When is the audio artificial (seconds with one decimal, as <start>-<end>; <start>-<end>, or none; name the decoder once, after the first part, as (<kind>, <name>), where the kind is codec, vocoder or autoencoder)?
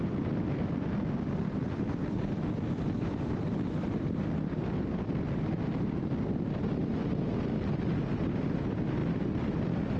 none